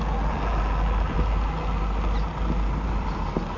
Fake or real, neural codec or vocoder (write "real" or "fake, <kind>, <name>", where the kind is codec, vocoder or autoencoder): real